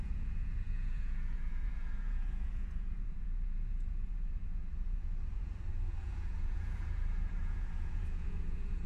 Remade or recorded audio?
remade